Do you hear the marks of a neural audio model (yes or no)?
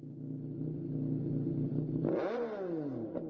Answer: no